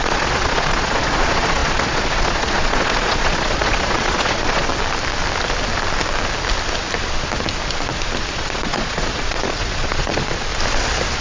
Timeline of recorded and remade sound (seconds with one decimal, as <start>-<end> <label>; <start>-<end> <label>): 0.0-4.7 remade; 4.7-8.3 recorded; 8.3-10.5 remade; 10.5-11.2 recorded

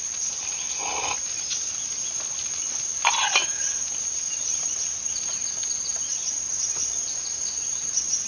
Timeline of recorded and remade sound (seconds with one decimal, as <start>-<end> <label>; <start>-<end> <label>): 0.0-8.3 recorded

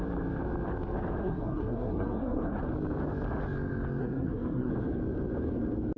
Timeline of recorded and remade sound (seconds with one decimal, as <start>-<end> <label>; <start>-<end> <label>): 0.0-1.2 recorded; 1.2-2.6 remade; 2.6-4.0 recorded; 4.0-4.7 remade; 4.7-6.0 recorded

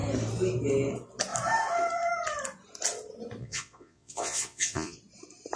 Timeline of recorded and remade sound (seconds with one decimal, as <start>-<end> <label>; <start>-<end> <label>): 0.0-3.4 recorded; 3.4-5.0 remade; 5.0-5.6 recorded

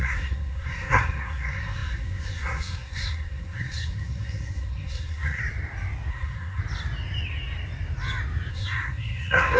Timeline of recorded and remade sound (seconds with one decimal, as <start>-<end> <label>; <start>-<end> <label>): 0.0-5.4 remade; 5.4-6.1 recorded; 6.1-6.6 remade; 6.6-8.5 recorded; 8.5-9.6 remade

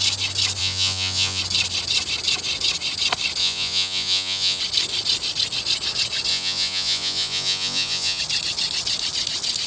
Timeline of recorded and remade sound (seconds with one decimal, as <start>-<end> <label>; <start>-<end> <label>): 0.0-0.6 recorded; 0.6-1.4 remade; 1.4-3.4 recorded; 3.4-4.6 remade; 4.6-6.3 recorded; 6.3-8.2 remade; 8.2-9.7 recorded

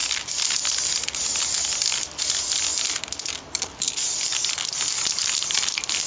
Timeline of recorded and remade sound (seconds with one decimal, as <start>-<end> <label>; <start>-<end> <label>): 0.0-6.1 recorded